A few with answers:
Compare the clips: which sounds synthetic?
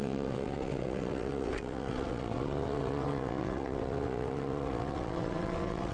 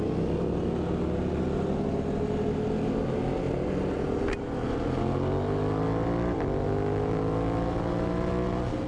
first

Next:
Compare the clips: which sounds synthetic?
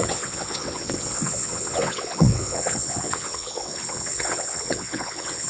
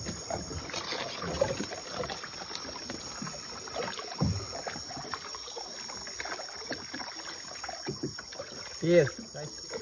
first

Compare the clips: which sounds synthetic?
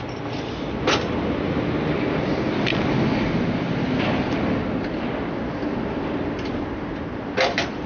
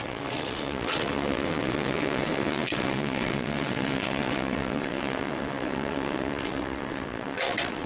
second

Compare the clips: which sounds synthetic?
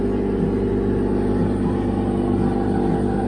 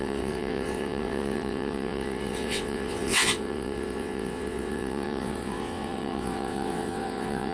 second